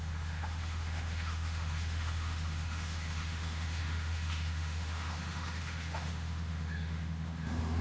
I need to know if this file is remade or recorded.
remade